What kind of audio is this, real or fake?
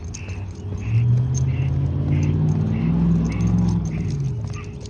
real